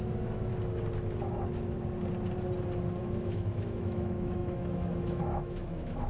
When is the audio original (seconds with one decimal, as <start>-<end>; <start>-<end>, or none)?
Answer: 0.5-3.0